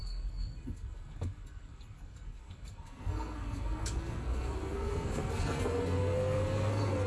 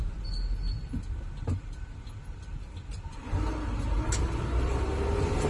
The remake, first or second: first